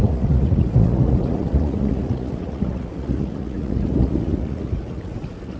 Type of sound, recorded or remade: remade